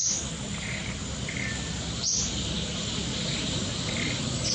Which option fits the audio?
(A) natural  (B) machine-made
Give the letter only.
A